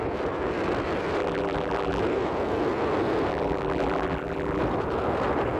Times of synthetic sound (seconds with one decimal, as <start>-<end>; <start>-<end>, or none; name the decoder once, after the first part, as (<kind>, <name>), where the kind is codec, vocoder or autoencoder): 1.2-2.0 (vocoder, BigVGAN v2); 3.3-4.6